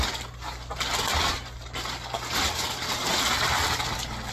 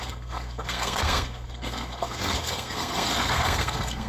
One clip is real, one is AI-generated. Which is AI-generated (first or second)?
second